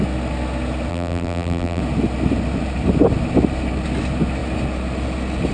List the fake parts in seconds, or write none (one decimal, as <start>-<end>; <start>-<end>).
0.9-1.8